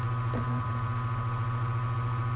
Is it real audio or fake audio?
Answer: real